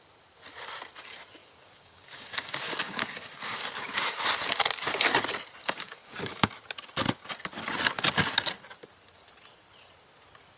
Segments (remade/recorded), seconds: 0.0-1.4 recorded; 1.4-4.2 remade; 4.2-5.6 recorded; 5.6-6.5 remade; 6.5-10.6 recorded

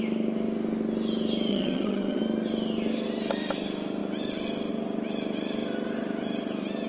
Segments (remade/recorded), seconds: 0.0-1.5 recorded; 1.5-2.2 remade; 2.2-6.9 recorded

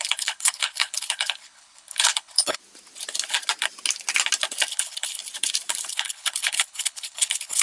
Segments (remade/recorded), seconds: 0.0-2.6 remade; 2.6-4.7 recorded; 4.7-5.2 remade; 5.2-5.9 recorded; 5.9-7.6 remade

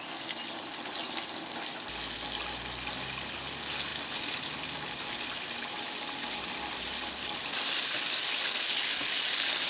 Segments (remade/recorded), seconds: 0.0-9.7 recorded